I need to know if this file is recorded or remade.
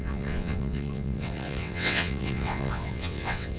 remade